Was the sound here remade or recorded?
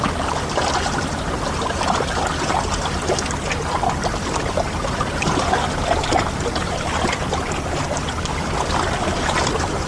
recorded